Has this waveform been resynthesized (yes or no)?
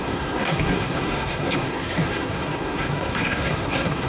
yes